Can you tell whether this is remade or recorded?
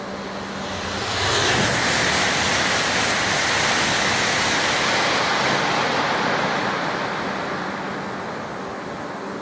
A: recorded